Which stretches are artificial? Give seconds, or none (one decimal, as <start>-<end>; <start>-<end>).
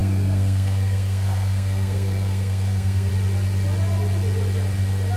0.0-3.1